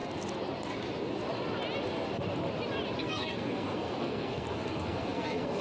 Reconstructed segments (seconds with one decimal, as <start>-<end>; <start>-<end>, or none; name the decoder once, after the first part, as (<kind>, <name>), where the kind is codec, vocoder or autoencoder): 3.0-5.6 (codec, SNAC)